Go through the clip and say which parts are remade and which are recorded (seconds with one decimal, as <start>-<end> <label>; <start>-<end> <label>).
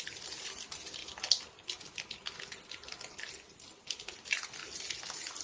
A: 0.0-5.4 recorded